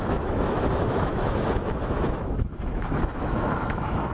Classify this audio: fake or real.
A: fake